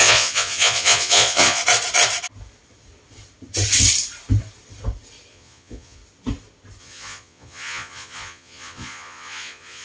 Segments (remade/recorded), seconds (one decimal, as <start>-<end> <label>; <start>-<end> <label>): 0.0-1.6 remade; 1.6-5.3 recorded; 5.3-6.0 remade; 6.0-6.8 recorded; 6.8-9.8 remade